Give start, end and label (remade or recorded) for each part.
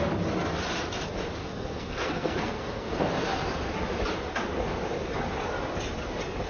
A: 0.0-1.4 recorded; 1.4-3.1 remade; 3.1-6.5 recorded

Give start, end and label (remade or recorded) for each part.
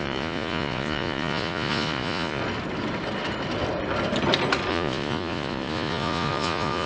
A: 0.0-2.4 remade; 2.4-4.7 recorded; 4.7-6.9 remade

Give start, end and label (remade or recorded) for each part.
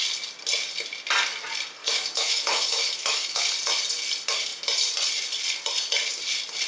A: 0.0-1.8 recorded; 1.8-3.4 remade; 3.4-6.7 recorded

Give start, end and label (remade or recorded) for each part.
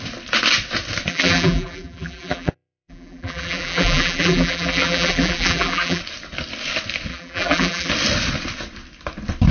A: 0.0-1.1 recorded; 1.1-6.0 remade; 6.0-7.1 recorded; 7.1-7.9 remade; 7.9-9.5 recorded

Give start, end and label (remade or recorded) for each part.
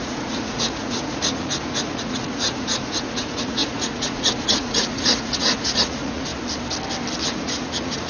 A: 0.0-6.3 remade; 6.3-7.2 recorded; 7.2-8.1 remade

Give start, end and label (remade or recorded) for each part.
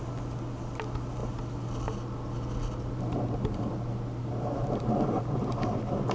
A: 0.0-6.1 recorded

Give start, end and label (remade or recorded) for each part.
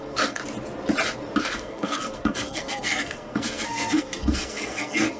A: 0.0-0.4 remade; 0.4-1.4 recorded; 1.4-5.2 remade